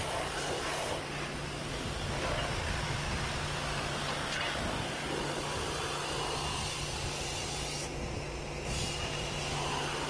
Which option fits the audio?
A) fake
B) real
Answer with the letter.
B